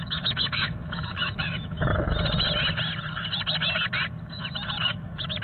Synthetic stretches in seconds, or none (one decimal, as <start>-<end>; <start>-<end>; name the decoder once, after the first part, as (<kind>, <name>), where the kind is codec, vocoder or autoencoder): 0.0-1.9 (autoencoder, DAC-VAE); 4.8-5.4